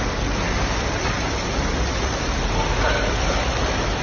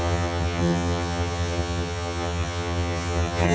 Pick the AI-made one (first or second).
second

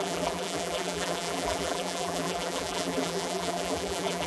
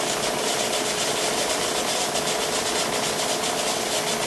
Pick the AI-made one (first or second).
first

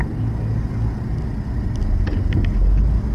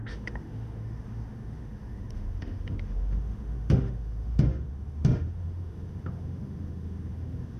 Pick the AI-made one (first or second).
second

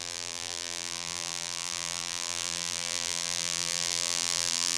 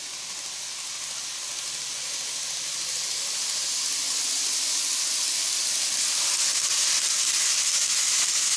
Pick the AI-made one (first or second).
first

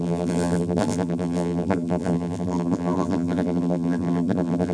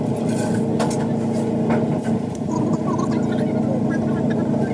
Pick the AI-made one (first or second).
first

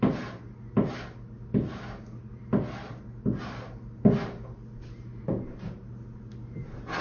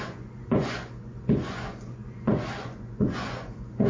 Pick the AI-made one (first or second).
second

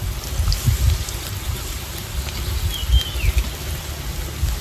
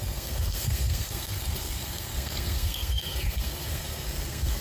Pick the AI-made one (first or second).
second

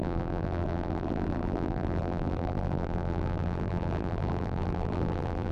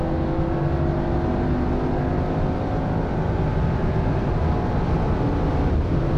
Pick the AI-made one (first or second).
first